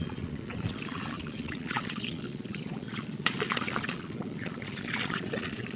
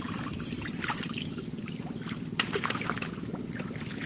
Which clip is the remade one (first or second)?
first